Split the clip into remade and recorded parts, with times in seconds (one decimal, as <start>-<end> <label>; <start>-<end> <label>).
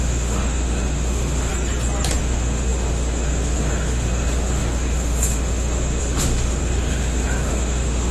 0.0-1.5 remade; 1.5-2.2 recorded; 2.2-8.1 remade